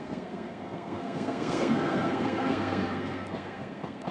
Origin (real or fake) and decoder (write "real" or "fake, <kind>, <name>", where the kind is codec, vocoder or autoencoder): fake, codec, SNAC